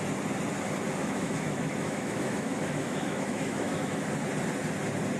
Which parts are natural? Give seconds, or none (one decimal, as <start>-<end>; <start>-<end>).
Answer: 0.0-1.0; 4.1-5.2

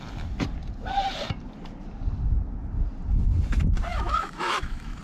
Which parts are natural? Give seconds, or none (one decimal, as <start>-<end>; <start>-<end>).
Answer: 0.0-3.9

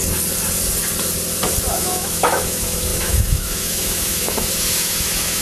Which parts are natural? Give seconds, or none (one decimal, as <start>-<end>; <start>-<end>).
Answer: 0.0-1.7

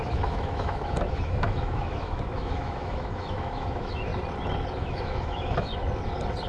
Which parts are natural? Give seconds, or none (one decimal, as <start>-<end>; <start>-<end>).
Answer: 4.1-4.8; 5.7-6.5

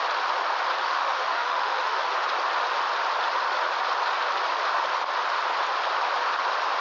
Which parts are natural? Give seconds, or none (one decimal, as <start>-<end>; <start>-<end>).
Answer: 0.0-0.8; 2.1-6.8

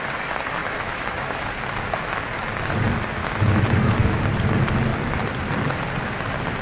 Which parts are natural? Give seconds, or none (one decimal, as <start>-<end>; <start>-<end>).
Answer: 0.0-0.6; 1.5-3.2; 4.2-6.6